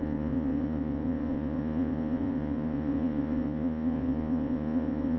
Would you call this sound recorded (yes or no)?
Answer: no